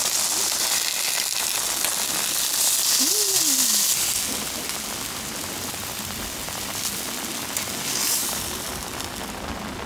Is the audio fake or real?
real